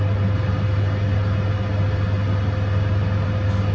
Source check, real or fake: real